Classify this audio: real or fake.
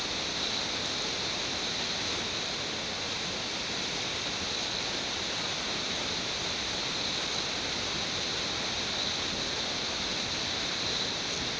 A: real